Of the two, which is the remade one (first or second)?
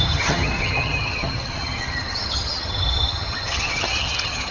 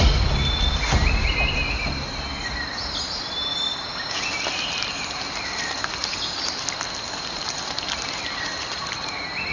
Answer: first